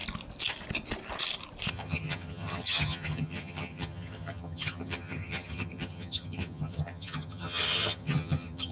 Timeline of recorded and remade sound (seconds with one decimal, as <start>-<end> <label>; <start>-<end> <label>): 0.0-1.7 recorded; 1.7-8.7 remade